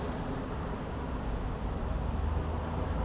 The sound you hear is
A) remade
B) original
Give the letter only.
B